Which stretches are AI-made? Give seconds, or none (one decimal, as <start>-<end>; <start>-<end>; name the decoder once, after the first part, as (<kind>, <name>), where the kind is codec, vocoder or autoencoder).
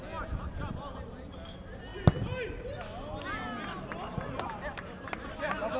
none